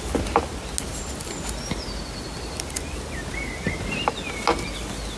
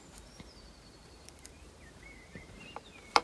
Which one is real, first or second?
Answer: first